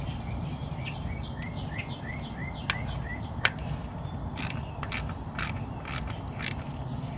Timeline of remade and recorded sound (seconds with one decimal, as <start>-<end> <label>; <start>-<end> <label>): 0.0-3.1 recorded; 3.1-6.3 remade; 6.3-7.2 recorded